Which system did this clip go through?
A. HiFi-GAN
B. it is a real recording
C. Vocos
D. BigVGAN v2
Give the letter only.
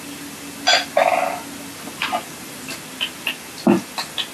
B